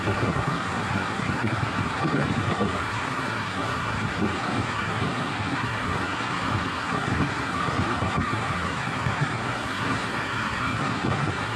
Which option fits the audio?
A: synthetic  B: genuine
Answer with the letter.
A